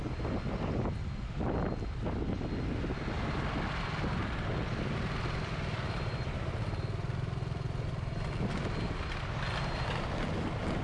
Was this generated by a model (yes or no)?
no